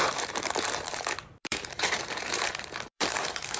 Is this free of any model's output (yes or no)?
no